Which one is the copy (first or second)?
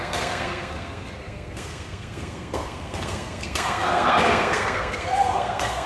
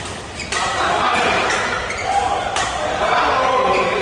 first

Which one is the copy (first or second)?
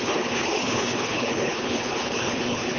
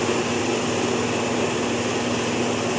first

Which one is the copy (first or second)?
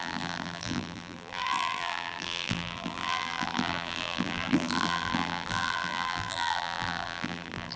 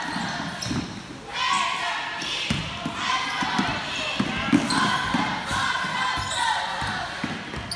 first